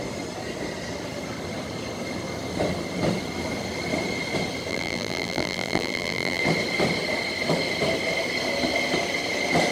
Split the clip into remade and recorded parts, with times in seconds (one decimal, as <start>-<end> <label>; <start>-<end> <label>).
0.0-4.7 recorded; 4.7-6.4 remade; 6.4-9.7 recorded

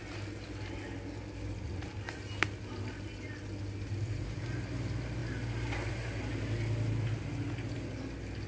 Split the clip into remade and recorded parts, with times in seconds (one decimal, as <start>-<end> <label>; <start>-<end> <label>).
0.0-8.5 recorded

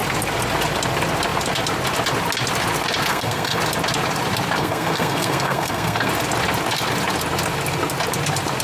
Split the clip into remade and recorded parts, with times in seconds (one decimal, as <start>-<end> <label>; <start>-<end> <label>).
0.0-3.1 recorded; 3.1-3.6 remade; 3.6-4.6 recorded; 4.6-6.1 remade; 6.1-8.6 recorded